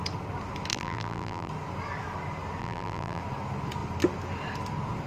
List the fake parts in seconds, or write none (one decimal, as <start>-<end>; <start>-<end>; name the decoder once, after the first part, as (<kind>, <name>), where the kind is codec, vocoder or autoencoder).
0.7-1.5 (vocoder, BigVGAN v2); 2.6-3.2